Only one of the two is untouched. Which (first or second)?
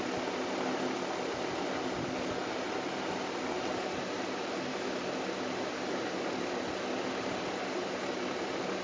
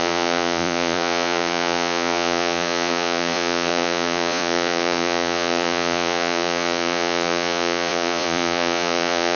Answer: first